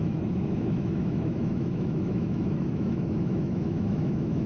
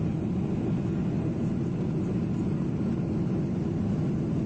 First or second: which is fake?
first